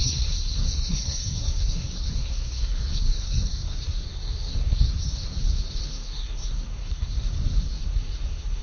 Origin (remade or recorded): remade